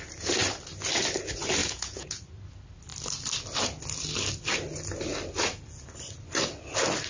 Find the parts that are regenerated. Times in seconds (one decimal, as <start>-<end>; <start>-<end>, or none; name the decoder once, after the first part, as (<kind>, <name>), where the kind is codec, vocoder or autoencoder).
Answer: 1.6-2.2 (vocoder, Vocos)

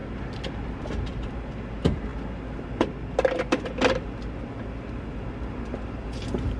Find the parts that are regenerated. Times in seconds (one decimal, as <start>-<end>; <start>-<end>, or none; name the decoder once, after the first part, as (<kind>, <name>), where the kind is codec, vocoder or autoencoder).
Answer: none

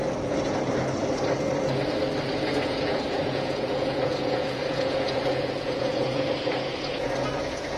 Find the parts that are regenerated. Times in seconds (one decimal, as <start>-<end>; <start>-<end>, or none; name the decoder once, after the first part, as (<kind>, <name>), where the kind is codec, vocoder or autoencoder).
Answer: 2.4-7.8 (vocoder, Vocos)

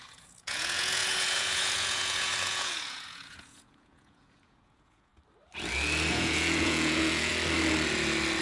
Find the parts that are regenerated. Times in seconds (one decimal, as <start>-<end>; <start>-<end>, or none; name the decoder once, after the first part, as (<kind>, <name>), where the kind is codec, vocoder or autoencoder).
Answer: 0.0-5.1 (vocoder, Vocos); 6.1-7.3

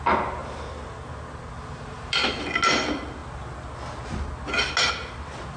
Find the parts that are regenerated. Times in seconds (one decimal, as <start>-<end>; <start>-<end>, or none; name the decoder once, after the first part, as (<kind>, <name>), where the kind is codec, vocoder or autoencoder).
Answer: none

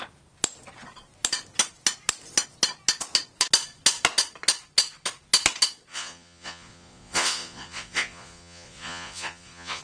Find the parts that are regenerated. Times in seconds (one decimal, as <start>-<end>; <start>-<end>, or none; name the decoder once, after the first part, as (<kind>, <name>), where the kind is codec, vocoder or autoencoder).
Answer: 5.9-9.8 (vocoder, Vocos)

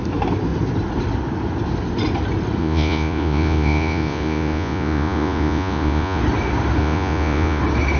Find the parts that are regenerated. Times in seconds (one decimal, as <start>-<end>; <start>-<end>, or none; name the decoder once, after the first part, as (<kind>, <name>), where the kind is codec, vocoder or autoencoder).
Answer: 2.6-6.2 (vocoder, Vocos); 6.8-7.6